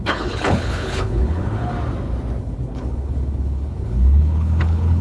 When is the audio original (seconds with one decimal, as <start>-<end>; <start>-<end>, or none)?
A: 1.7-2.4